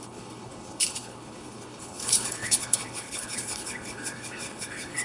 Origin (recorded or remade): remade